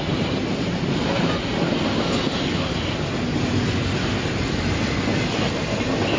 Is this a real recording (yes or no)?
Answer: yes